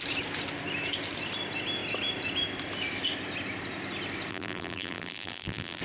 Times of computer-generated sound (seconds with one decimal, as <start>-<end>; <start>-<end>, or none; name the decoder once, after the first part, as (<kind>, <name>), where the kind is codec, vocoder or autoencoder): 4.3-5.8 (vocoder, BigVGAN v2)